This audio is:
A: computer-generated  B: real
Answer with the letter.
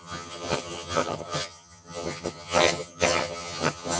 A